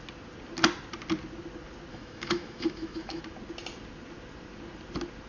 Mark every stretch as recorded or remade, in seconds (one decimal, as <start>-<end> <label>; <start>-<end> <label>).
0.0-1.9 recorded; 1.9-3.2 remade; 3.2-5.3 recorded